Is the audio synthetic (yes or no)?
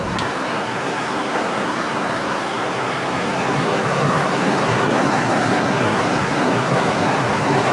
yes